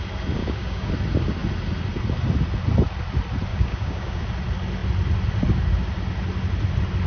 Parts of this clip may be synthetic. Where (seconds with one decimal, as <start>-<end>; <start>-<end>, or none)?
0.4-0.9; 3.5-4.2